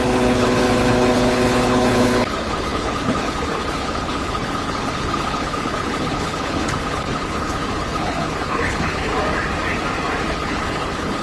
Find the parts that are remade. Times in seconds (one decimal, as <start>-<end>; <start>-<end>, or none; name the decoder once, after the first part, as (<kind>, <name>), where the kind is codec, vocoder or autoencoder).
0.0-9.1 (codec, HILCodec); 10.3-11.2